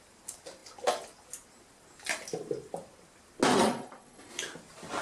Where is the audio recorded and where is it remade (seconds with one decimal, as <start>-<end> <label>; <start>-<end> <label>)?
0.0-3.5 recorded; 3.5-4.3 remade; 4.3-5.0 recorded